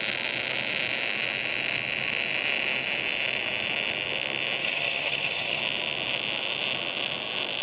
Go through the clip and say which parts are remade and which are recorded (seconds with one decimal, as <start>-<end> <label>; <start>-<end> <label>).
0.0-4.6 recorded; 4.6-5.6 remade; 5.6-7.6 recorded